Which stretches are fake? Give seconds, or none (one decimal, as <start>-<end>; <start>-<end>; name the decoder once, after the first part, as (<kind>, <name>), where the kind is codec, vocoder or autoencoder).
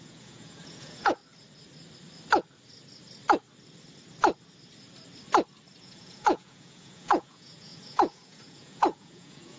0.0-1.2 (vocoder, Vocos); 5.8-9.6